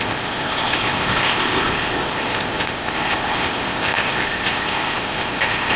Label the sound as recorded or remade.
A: remade